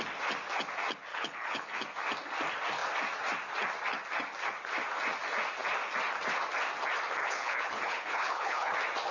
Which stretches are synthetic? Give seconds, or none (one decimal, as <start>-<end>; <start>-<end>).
1.1-1.7; 7.2-8.7